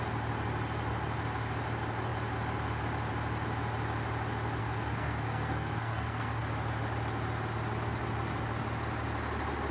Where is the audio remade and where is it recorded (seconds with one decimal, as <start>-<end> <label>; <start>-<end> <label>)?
0.0-4.6 recorded; 4.6-6.4 remade; 6.4-9.7 recorded